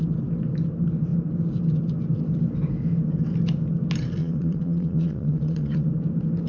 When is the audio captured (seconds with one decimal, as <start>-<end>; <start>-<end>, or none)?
0.0-4.2; 5.9-6.5